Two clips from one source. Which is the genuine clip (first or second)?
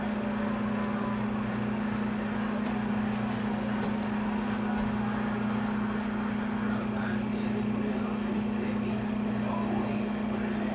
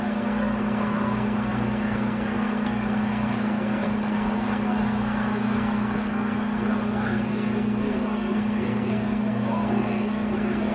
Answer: first